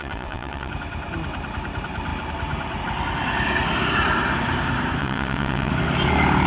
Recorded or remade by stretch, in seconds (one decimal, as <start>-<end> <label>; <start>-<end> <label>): 0.0-0.7 remade; 0.7-5.0 recorded; 5.0-5.7 remade; 5.7-6.5 recorded